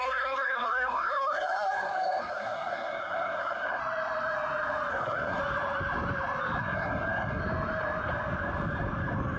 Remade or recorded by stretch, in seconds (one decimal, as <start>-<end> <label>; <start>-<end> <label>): 0.0-3.8 remade; 3.8-4.9 recorded; 4.9-5.4 remade; 5.4-6.6 recorded; 6.6-7.4 remade; 7.4-9.4 recorded